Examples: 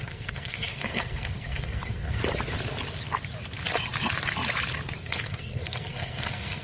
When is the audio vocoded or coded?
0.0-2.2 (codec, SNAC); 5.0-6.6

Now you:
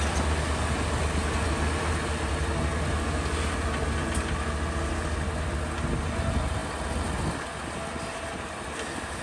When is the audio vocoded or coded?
none

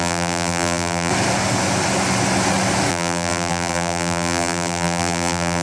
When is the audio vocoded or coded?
0.0-1.1 (vocoder, BigVGAN v2); 2.9-5.6

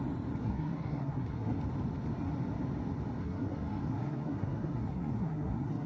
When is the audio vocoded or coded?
0.4-1.6 (codec, SNAC); 3.2-5.9

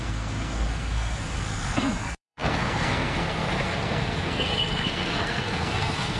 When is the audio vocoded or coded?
0.0-6.2 (codec, SNAC)

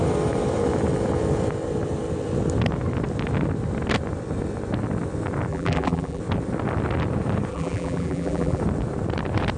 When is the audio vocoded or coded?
5.5-6.2 (vocoder, BigVGAN v2); 7.5-8.6